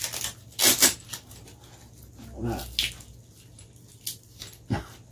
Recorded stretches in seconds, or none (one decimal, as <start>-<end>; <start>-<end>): 0.0-5.1